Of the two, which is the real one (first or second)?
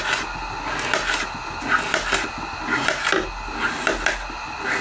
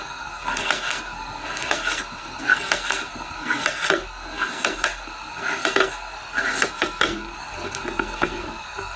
first